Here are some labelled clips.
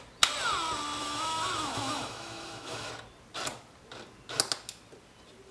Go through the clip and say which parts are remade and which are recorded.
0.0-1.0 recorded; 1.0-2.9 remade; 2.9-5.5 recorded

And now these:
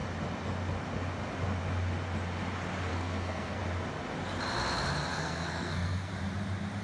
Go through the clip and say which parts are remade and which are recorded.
0.0-2.9 recorded; 2.9-3.6 remade; 3.6-5.1 recorded; 5.1-6.1 remade; 6.1-6.8 recorded